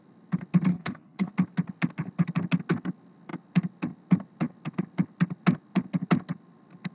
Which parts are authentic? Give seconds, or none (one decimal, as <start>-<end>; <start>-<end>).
0.0-0.7; 1.3-6.9